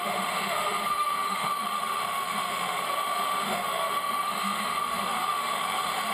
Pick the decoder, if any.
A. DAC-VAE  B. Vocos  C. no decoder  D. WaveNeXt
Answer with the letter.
A